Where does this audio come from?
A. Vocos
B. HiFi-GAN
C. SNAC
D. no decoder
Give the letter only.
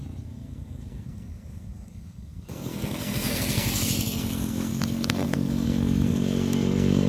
C